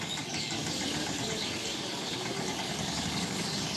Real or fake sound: fake